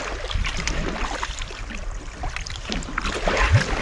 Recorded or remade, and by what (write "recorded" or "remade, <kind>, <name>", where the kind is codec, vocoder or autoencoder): remade, vocoder, BigVGAN v2